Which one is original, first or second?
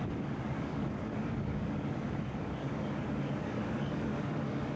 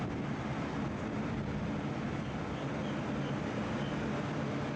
second